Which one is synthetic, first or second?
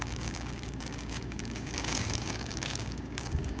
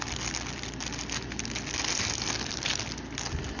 first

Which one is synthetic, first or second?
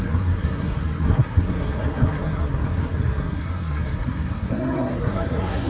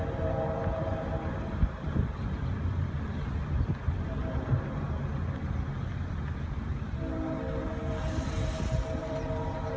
first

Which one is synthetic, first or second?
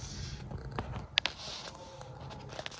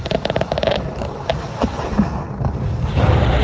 second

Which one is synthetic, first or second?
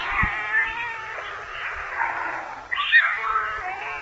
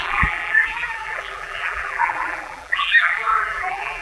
second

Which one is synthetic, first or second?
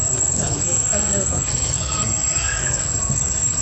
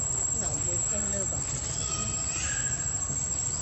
first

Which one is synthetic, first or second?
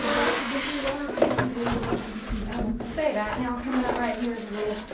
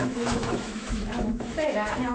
second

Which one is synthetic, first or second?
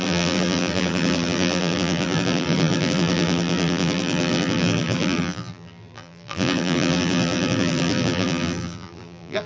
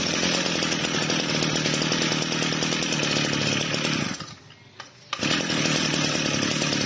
first